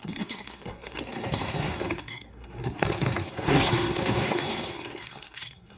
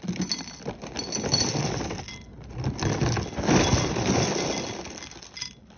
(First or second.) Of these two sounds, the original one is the second